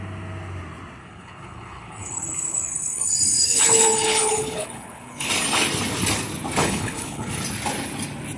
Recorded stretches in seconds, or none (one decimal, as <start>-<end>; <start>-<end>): 0.0-1.0; 5.3-6.6; 7.3-8.4